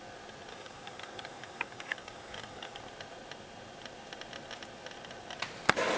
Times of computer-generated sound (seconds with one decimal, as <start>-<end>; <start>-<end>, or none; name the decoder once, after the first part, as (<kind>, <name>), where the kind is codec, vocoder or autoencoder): 0.5-2.8 (codec, DAC)